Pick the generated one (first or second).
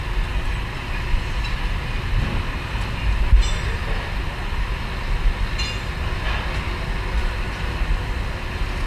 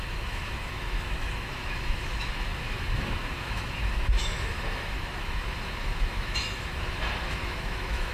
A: second